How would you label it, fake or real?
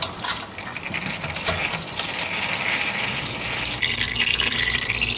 fake